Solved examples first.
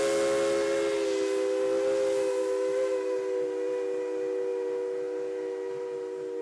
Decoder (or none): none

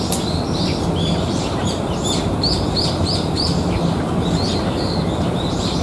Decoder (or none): vocoder, BigVGAN v2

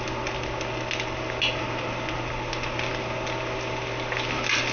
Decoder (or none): none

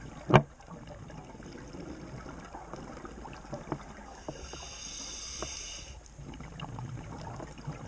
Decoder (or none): none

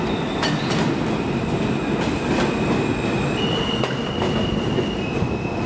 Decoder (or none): none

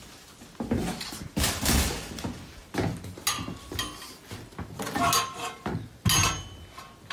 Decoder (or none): none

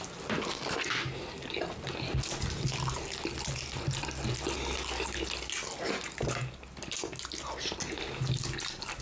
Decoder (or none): none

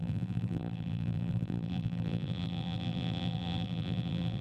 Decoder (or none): vocoder, BigVGAN v2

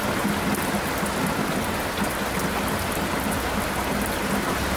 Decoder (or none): none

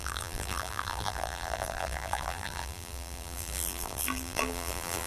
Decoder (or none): vocoder, BigVGAN v2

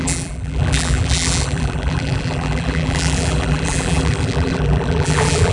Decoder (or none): vocoder, BigVGAN v2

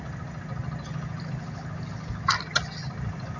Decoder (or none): none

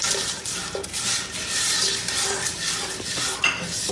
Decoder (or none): vocoder, BigVGAN v2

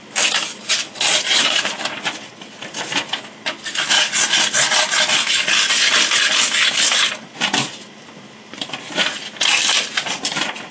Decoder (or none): none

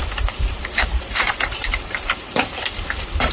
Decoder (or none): vocoder, BigVGAN v2